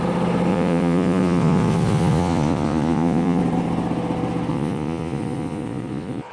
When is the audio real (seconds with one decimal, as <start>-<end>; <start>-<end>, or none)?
0.0-0.5; 3.4-4.5